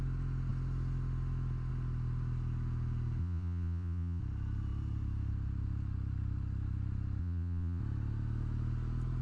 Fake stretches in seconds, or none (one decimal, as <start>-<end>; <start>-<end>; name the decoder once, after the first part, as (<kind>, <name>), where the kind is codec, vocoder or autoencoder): 3.2-4.2 (vocoder, Vocos); 7.2-7.8